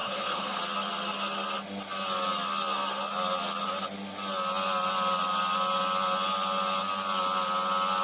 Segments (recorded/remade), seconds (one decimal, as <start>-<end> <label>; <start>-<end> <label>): 0.0-0.6 remade; 0.6-8.0 recorded